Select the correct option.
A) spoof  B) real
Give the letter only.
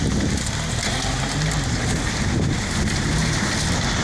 B